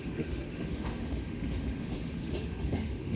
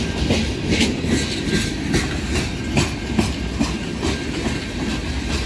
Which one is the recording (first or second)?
second